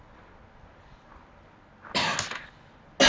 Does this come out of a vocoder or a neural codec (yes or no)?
no